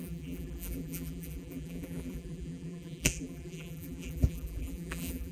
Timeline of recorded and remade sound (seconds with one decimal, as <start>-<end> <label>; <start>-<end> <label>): 0.0-5.3 remade